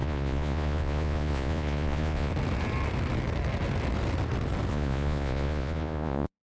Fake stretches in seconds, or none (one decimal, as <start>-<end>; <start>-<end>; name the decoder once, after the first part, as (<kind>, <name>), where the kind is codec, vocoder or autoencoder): 0.0-2.3 (vocoder, Vocos); 4.7-6.4